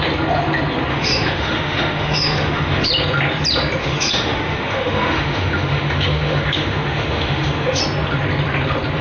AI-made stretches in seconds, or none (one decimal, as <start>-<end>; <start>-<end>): 0.9-2.9; 3.8-7.8